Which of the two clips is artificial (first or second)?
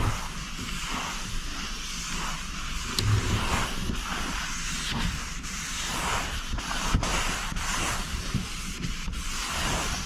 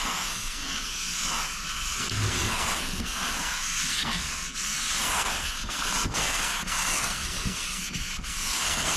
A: second